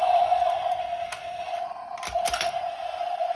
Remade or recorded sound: recorded